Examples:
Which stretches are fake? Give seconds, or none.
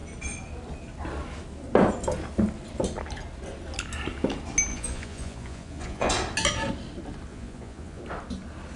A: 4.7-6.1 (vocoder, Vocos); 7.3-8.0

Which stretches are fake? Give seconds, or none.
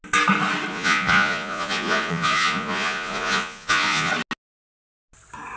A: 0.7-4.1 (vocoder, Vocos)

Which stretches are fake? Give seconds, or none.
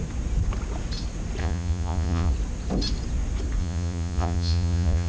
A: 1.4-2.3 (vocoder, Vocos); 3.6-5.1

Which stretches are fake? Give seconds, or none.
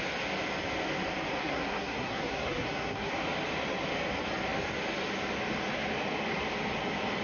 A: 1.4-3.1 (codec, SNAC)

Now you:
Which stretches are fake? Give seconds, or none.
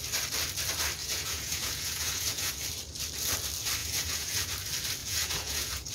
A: 1.0-2.5 (vocoder, Vocos); 3.8-4.5; 5.0-5.9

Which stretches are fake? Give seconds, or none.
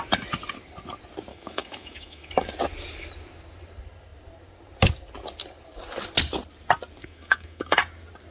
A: 1.3-2.3 (autoencoder, DAC-VAE); 7.0-7.8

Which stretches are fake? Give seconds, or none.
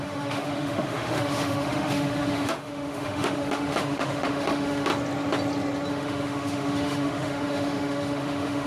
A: 0.0-4.9 (autoencoder, DAC-VAE); 5.9-8.7